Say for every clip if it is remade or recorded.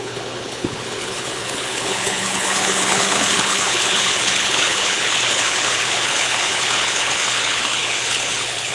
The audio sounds remade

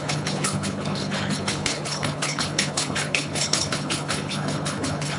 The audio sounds remade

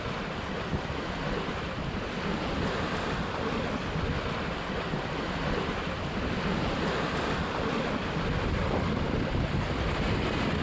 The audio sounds recorded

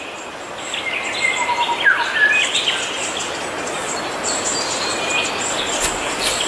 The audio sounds recorded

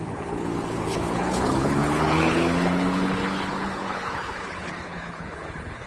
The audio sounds remade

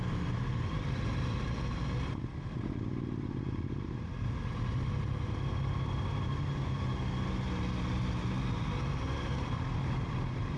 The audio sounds recorded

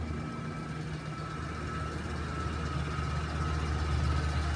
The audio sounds recorded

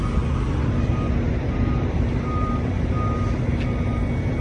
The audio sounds recorded